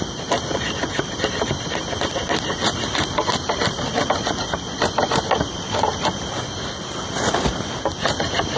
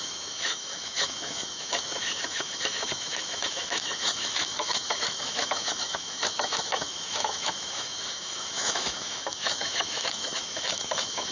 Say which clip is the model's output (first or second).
second